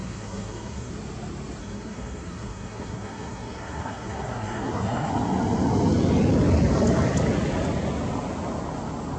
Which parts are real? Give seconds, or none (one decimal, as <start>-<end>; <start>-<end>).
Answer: 0.9-1.6; 5.1-9.2